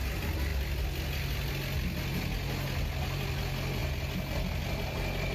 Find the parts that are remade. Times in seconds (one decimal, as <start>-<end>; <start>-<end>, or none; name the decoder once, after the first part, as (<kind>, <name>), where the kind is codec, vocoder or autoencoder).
none